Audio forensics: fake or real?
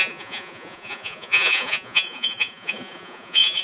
fake